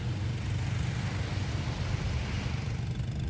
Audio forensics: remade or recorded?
recorded